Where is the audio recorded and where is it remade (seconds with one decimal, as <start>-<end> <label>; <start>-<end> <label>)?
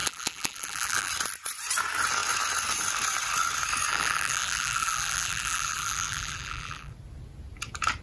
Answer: 0.0-1.1 remade; 1.1-3.9 recorded; 3.9-6.9 remade; 6.9-8.0 recorded